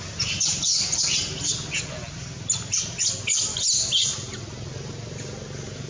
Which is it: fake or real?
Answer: real